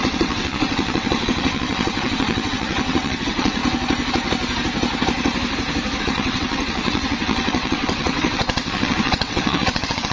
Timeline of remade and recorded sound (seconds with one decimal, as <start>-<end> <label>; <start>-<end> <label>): 0.0-3.6 remade; 3.6-6.0 recorded; 6.0-10.1 remade